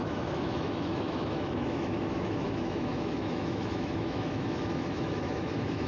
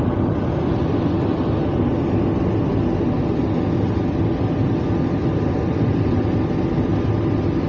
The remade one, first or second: first